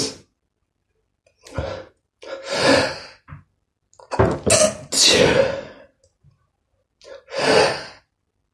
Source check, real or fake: real